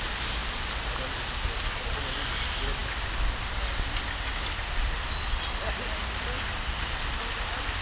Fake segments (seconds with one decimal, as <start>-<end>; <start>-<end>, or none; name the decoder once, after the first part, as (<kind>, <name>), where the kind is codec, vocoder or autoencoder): none